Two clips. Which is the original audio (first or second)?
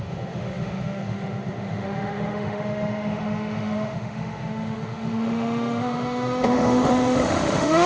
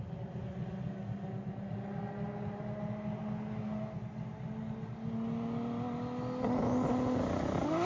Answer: second